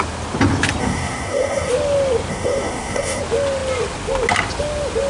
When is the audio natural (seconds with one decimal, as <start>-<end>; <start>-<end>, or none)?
0.0-0.8; 1.7-2.3; 3.2-5.1